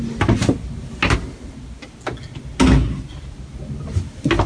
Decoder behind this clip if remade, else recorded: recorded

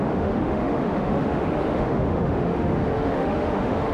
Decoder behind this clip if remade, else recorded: remade, autoencoder, DAC-VAE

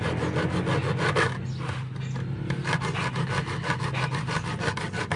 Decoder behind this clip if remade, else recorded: recorded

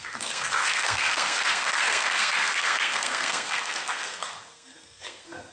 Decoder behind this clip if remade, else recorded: remade, codec, SNAC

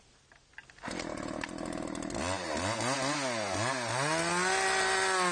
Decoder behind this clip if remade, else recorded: recorded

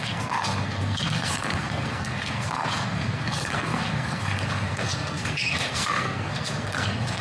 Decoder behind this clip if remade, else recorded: remade, codec, SNAC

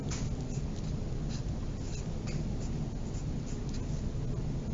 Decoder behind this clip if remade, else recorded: recorded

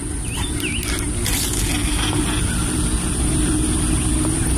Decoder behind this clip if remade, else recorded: recorded